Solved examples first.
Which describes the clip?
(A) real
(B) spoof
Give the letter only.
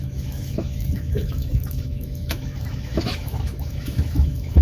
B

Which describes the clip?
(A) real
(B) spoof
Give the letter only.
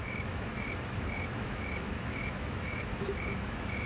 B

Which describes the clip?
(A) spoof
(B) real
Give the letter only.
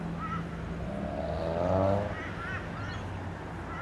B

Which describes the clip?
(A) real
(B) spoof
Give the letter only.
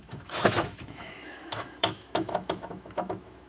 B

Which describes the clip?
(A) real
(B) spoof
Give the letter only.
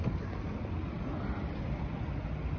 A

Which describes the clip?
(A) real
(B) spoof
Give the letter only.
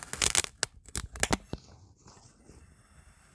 A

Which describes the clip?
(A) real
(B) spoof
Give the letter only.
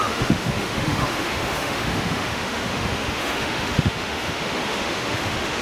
B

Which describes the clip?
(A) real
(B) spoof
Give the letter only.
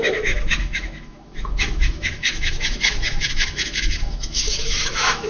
B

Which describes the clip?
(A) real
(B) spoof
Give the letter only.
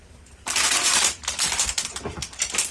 A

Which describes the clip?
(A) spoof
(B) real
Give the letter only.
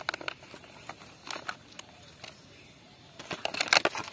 B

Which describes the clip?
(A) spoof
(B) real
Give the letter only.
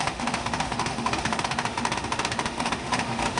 A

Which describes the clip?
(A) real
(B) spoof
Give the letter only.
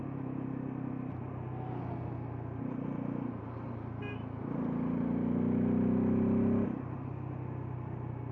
A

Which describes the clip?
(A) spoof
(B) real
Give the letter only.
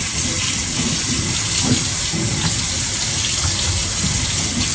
B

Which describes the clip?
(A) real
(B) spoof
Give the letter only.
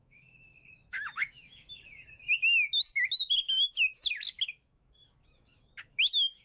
B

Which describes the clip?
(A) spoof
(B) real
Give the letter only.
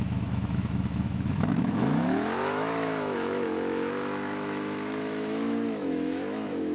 A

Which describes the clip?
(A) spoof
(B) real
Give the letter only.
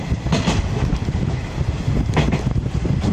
B